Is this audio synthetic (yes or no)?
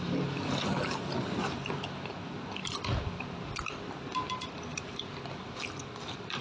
no